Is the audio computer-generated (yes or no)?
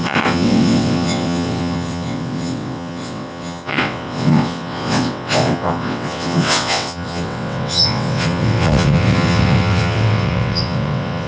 yes